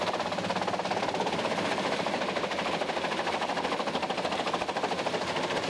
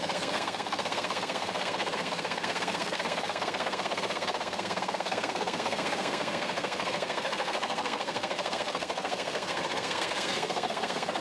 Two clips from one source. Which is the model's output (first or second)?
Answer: second